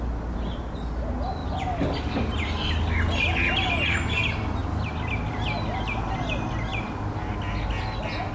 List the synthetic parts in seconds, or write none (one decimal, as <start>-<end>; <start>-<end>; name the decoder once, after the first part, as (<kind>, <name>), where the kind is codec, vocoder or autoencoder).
none